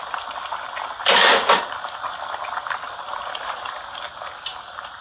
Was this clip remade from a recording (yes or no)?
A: no